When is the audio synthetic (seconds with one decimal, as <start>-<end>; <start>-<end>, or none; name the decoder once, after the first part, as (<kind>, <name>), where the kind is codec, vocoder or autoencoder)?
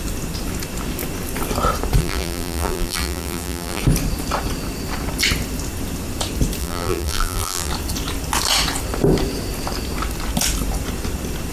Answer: 2.0-3.8 (vocoder, BigVGAN v2); 6.6-7.7